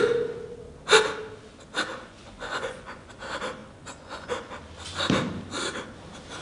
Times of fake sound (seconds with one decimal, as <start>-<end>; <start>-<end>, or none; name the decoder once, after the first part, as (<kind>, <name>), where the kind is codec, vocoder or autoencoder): 1.9-3.1 (vocoder, Vocos); 3.6-4.5